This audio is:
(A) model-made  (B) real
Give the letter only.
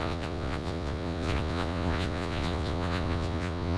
A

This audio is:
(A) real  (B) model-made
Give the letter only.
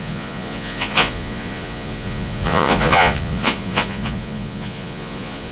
B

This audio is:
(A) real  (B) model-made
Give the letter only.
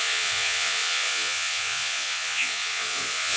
B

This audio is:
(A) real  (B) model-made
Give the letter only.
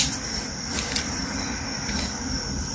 A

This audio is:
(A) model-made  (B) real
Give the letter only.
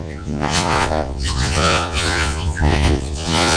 A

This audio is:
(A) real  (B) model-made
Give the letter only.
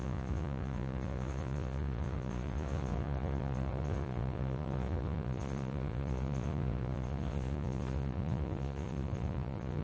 B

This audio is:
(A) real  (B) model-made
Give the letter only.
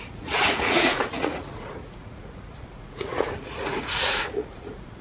B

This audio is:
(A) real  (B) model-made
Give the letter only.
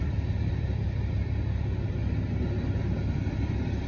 A